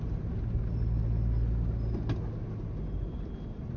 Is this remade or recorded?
recorded